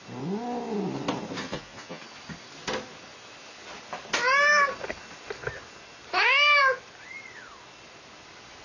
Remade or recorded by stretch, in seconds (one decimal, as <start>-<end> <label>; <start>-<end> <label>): 0.0-1.4 recorded; 1.4-2.0 remade; 2.0-8.6 recorded